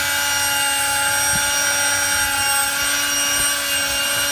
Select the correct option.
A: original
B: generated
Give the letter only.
A